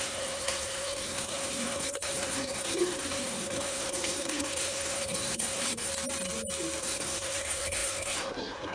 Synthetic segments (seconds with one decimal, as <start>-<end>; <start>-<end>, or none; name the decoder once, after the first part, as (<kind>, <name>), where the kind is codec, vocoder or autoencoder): 0.0-5.9 (codec, SNAC); 6.8-8.7